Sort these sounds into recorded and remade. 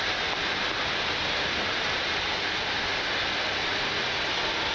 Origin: recorded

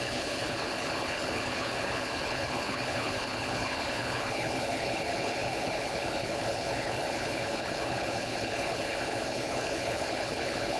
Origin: remade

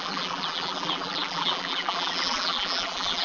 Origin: remade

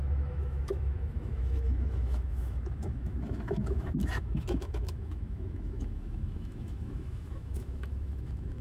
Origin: remade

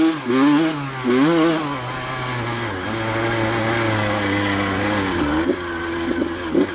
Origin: recorded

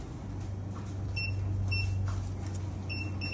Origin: recorded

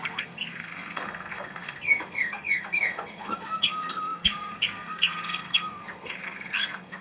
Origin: remade